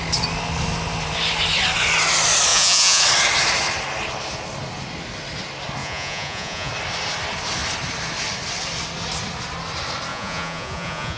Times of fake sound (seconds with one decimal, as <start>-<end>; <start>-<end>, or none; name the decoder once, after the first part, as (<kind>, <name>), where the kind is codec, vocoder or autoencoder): 2.5-3.0 (vocoder, Vocos); 5.8-6.7; 10.1-11.2